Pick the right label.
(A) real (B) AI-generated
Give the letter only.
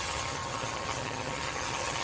B